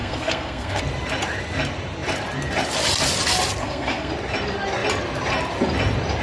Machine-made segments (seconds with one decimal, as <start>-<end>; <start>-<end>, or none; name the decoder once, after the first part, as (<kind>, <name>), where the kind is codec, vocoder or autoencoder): 0.0-0.8 (codec, SNAC); 3.6-4.1